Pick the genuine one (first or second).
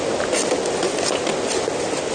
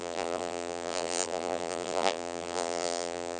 first